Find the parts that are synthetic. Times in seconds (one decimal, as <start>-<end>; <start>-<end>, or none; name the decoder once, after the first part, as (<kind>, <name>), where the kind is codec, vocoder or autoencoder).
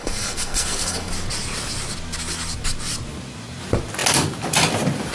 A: 0.0-1.1 (codec, SNAC)